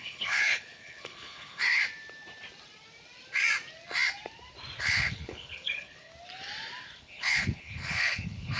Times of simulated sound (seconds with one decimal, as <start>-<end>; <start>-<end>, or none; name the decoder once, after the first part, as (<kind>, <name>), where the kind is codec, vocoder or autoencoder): 0.0-1.8 (codec, HILCodec); 4.8-6.1; 7.0-8.6